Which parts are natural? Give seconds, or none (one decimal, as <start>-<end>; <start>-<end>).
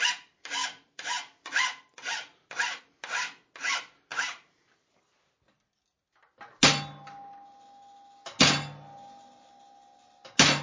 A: 0.0-0.6; 2.8-4.1; 5.1-10.6